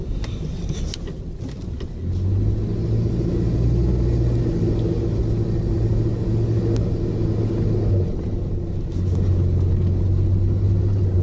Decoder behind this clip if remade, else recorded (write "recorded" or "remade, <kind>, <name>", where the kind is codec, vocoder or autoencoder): recorded